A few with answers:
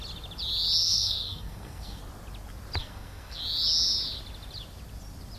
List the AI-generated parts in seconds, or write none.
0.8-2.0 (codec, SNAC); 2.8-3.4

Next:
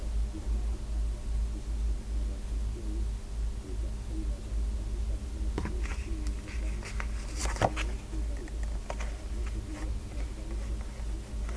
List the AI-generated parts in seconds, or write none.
none